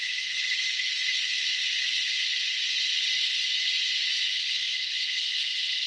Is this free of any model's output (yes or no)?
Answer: no